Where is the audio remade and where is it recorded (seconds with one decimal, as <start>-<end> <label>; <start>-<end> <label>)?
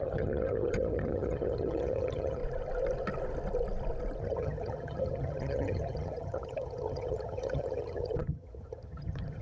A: 0.0-2.4 remade; 2.4-4.2 recorded; 4.2-9.4 remade